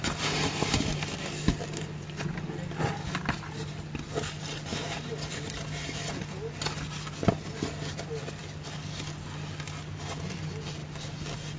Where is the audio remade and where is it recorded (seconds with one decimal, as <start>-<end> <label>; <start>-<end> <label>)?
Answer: 0.0-11.6 recorded